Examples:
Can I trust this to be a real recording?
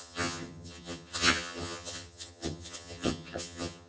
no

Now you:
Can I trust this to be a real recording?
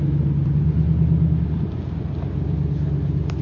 yes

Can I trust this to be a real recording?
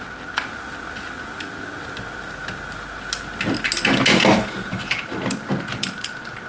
yes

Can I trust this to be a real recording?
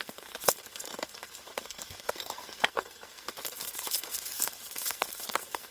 no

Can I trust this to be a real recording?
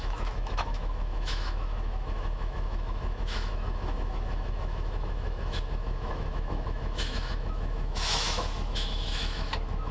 no